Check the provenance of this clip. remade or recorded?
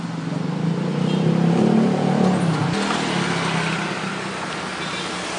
recorded